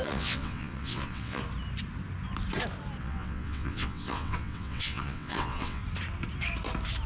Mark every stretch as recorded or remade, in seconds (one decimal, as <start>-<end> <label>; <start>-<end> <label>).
0.0-1.4 remade; 1.4-3.0 recorded; 3.0-5.8 remade; 5.8-7.1 recorded